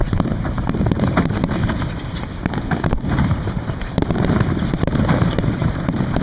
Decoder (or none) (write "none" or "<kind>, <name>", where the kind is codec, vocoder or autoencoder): vocoder, BigVGAN v2